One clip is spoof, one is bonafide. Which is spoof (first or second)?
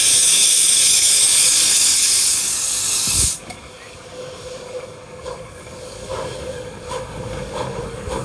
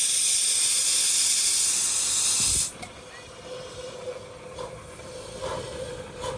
first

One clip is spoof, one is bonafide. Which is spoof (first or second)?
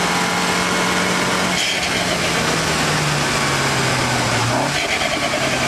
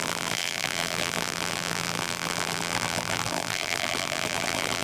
second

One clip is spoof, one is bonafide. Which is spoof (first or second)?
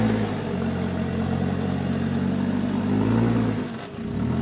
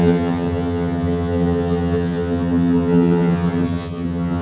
second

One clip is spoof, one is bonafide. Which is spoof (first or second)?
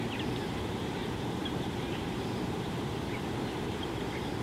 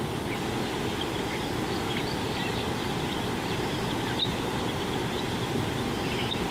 first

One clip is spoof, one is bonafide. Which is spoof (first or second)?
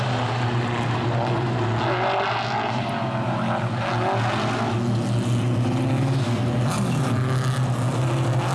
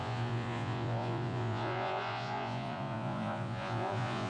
second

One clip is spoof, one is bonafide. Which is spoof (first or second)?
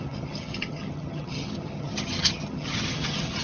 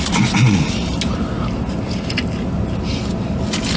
first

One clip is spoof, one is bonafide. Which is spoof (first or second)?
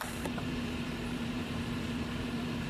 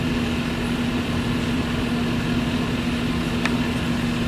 first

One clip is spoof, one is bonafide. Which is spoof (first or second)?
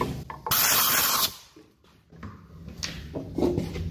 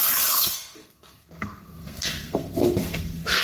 second